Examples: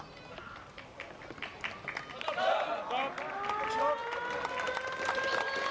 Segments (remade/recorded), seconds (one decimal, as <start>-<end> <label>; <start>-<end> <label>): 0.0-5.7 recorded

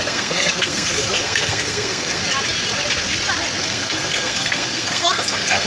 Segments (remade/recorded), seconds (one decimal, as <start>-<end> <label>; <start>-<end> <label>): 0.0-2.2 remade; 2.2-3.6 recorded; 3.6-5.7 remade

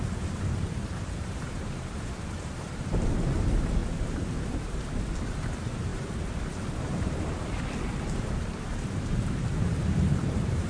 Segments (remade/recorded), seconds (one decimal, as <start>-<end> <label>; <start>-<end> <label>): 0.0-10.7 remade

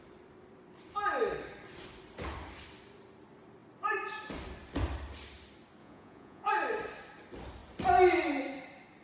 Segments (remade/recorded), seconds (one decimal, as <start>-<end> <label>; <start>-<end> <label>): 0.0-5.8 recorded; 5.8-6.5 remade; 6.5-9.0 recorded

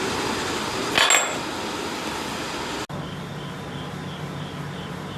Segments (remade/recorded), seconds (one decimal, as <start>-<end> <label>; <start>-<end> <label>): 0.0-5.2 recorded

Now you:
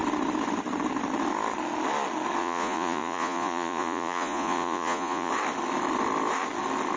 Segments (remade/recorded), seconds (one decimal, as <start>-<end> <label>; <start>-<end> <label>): 0.0-2.4 recorded; 2.4-5.3 remade; 5.3-7.0 recorded

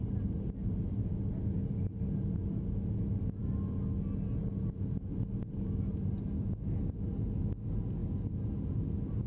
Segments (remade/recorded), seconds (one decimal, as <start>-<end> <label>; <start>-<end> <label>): 0.0-9.3 recorded